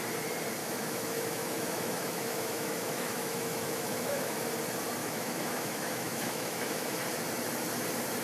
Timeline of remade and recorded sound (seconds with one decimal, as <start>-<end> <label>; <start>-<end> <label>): 0.0-0.6 recorded; 0.6-4.5 remade; 4.5-5.0 recorded; 5.0-7.0 remade; 7.0-8.2 recorded